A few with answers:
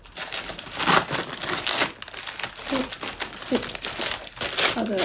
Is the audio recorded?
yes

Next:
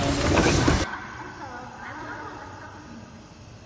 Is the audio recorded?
yes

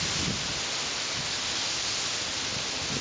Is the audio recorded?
yes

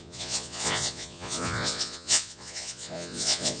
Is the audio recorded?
no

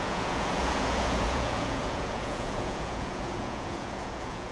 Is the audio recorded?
no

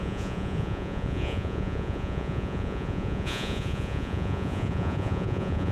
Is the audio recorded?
no